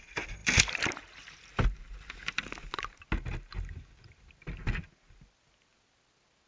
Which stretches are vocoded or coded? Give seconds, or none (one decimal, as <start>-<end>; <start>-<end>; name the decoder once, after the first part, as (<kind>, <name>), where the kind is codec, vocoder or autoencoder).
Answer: none